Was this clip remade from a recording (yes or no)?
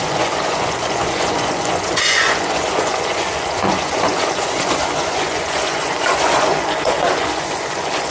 yes